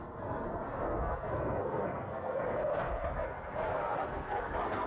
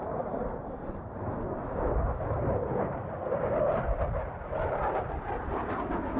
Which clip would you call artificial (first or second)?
first